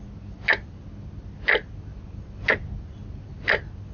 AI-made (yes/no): no